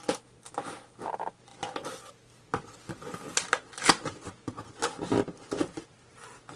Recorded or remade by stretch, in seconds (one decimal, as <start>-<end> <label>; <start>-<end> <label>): 0.0-6.6 recorded